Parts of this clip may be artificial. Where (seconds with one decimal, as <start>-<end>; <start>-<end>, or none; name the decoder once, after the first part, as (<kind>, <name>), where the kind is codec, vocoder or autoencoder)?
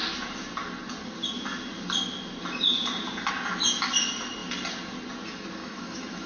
5.6-6.3 (autoencoder, DAC-VAE)